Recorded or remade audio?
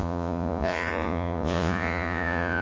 remade